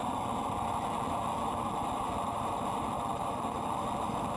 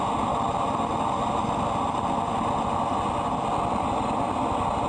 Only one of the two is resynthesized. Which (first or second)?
first